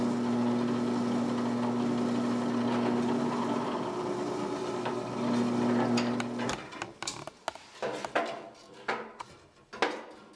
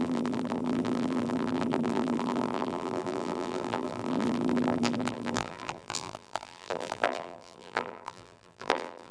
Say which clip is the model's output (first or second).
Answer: second